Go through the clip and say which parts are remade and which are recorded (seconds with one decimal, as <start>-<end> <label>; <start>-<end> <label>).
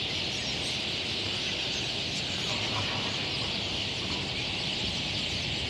0.0-5.7 recorded